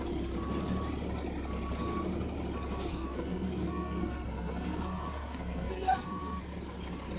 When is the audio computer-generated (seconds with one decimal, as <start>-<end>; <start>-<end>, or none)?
2.9-6.4